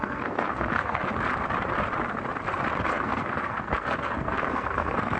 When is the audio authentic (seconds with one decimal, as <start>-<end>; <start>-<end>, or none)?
1.0-2.9